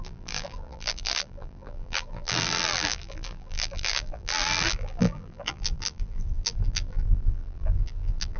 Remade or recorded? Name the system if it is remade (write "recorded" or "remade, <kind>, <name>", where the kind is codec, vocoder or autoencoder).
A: remade, vocoder, BigVGAN v2